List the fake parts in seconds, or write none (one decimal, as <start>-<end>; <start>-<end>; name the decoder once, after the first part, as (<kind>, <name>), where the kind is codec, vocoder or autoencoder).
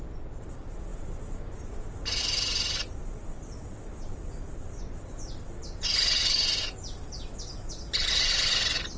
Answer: none